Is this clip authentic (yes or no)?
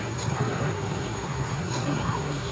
no